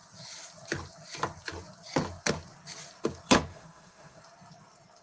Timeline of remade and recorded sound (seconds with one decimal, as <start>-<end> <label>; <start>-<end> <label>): 0.0-3.5 recorded; 3.5-4.2 remade; 4.2-5.0 recorded